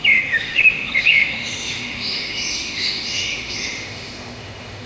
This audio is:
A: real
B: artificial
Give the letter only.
B